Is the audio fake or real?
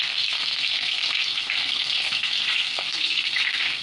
fake